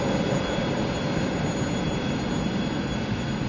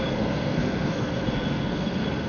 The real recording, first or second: first